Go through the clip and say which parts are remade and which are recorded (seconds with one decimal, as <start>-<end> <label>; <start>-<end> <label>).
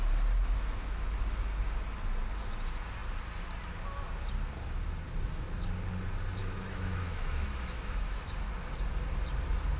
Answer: 0.0-6.4 recorded; 6.4-8.5 remade; 8.5-9.8 recorded